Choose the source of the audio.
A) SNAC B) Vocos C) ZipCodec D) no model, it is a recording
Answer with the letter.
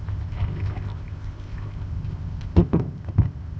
C